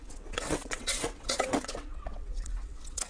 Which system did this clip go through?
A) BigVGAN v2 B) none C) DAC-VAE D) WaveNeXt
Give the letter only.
D